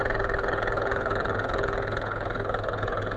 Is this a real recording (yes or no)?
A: no